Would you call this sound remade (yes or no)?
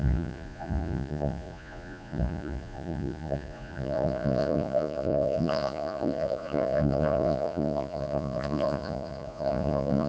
yes